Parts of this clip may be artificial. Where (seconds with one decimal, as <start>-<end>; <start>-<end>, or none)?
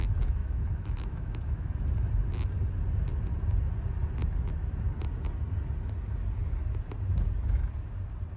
0.4-1.7